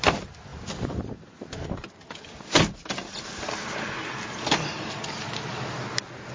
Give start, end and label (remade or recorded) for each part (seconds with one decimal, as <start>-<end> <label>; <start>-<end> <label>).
0.0-6.3 recorded